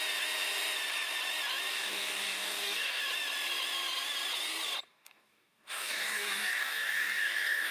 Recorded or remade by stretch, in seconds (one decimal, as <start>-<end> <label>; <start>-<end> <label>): 0.0-1.7 recorded; 1.7-3.0 remade; 3.0-4.9 recorded; 4.9-7.7 remade

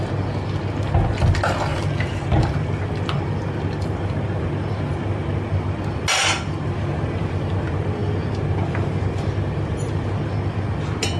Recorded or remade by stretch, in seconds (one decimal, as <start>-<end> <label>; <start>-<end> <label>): 0.0-11.2 recorded

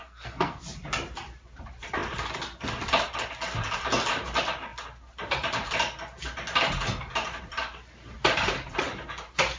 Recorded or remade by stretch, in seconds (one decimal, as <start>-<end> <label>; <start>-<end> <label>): 0.0-0.6 remade; 0.6-9.6 recorded

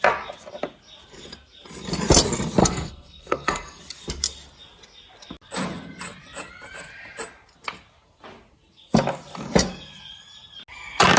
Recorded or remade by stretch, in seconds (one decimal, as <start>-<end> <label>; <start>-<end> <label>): 0.0-2.6 recorded; 2.6-3.8 remade; 3.8-11.2 recorded

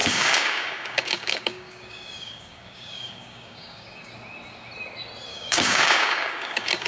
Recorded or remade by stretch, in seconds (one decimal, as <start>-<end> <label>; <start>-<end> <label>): 0.0-4.1 remade; 4.1-5.3 recorded; 5.3-6.9 remade

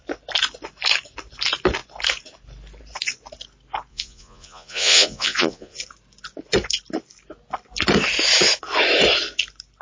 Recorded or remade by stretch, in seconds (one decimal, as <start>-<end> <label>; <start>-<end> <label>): 0.0-3.9 recorded; 3.9-5.8 remade; 5.8-9.8 recorded

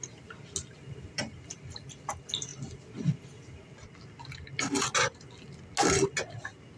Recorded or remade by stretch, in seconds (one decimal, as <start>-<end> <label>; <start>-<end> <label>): 0.0-6.8 recorded

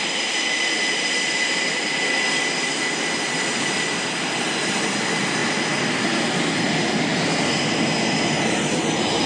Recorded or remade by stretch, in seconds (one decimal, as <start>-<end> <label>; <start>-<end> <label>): 0.0-9.3 recorded